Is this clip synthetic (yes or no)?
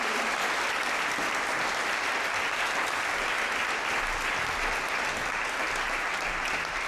no